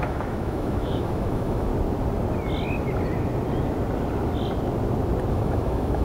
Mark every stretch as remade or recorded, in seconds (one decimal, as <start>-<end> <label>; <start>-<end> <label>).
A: 0.0-1.7 remade; 1.7-5.3 recorded; 5.3-6.0 remade